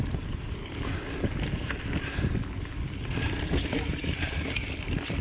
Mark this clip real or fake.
real